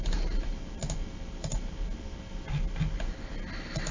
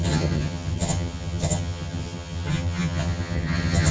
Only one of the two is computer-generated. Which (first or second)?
second